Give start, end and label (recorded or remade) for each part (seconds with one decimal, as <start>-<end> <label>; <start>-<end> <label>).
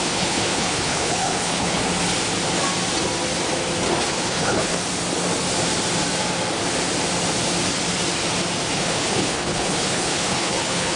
0.0-1.8 remade; 1.8-4.0 recorded; 4.0-4.7 remade; 4.7-8.7 recorded; 8.7-11.0 remade